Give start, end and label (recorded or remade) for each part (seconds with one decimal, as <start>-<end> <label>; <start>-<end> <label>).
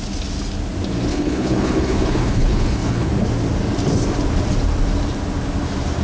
0.0-1.1 recorded; 1.1-3.1 remade; 3.1-6.0 recorded